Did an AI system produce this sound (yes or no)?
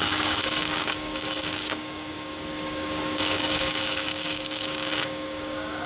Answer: yes